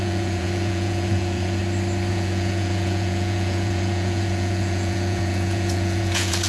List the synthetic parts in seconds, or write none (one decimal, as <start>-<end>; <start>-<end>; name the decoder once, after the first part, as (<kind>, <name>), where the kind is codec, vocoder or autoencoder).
0.0-1.6 (vocoder, Vocos); 2.1-6.5